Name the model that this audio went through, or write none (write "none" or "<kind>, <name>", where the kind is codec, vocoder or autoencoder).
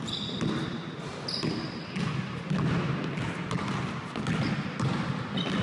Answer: none